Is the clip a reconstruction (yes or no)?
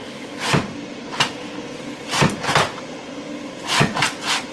no